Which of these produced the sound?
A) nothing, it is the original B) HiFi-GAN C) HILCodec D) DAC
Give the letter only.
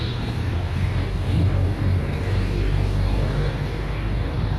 D